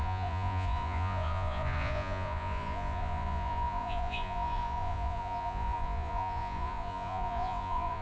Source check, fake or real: fake